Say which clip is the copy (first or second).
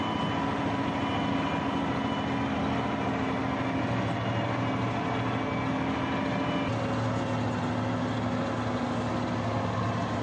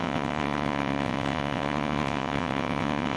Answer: second